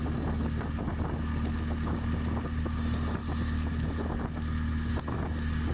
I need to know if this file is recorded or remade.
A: recorded